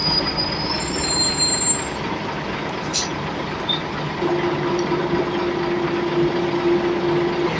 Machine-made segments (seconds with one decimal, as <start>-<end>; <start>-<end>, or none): none